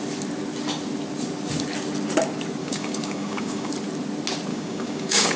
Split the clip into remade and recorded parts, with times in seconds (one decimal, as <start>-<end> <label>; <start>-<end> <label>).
0.0-2.6 recorded; 2.6-3.7 remade; 3.7-4.5 recorded; 4.5-5.4 remade